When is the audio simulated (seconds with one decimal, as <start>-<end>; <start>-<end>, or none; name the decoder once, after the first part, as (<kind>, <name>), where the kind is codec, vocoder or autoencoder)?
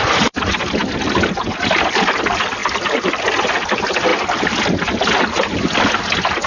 none